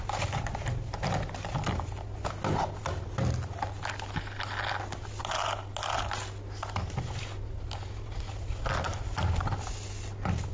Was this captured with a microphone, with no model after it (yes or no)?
yes